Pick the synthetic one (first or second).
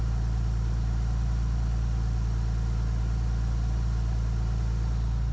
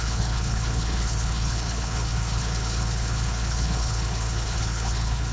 second